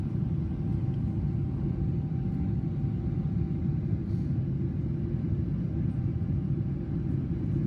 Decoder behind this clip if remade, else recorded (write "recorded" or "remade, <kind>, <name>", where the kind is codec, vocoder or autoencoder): recorded